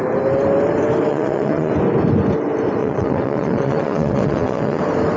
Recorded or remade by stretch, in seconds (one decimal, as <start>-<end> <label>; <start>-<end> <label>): 0.0-1.1 recorded; 1.1-1.7 remade; 1.7-2.8 recorded; 2.8-4.8 remade; 4.8-5.2 recorded